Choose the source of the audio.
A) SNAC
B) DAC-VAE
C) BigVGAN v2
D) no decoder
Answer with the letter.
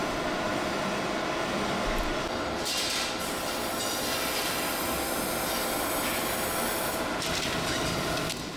D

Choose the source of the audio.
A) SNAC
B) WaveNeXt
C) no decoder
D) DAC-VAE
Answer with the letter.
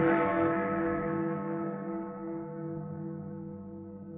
A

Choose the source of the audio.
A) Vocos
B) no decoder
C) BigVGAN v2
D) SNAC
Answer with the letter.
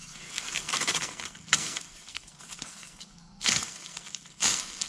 D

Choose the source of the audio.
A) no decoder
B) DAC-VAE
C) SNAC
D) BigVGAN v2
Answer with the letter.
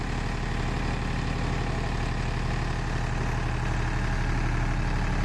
A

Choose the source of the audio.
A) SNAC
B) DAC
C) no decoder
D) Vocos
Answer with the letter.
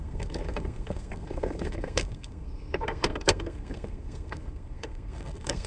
A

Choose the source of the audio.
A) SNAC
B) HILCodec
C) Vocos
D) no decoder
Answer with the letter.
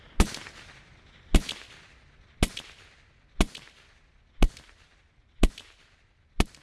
D